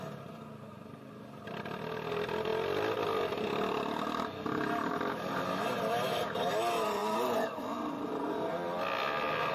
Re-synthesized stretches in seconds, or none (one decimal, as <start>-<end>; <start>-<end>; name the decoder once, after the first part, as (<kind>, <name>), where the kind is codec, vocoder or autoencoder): none